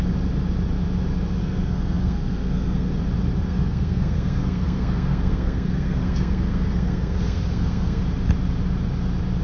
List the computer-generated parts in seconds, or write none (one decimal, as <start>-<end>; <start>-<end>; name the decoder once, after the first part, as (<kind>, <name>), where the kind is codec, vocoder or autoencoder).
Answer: 1.4-2.9 (codec, SNAC); 3.5-8.0